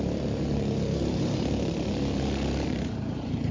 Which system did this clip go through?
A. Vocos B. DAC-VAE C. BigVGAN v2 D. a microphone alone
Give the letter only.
C